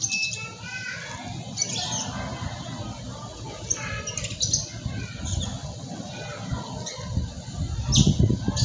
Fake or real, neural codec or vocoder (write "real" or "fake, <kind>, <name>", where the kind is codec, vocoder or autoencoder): real